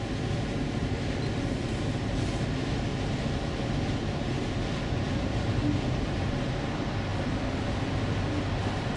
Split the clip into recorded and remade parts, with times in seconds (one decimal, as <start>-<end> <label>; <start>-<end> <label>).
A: 0.0-0.8 recorded; 0.8-1.7 remade; 1.7-7.1 recorded; 7.1-8.0 remade; 8.0-9.0 recorded